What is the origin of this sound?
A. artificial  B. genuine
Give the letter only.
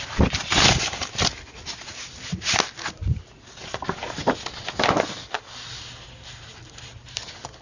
B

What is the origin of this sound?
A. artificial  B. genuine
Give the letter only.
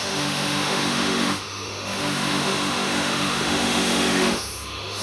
A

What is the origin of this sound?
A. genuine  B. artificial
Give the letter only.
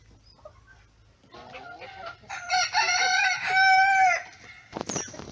A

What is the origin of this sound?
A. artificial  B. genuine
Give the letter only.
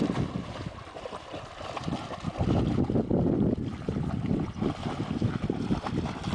B